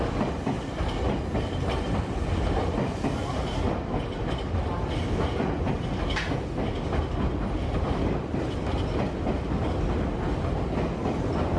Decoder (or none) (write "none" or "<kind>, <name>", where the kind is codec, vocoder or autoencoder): none